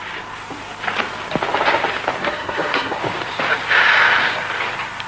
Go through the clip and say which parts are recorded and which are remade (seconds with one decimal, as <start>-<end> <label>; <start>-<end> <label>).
0.0-2.2 recorded; 2.2-3.0 remade; 3.0-5.1 recorded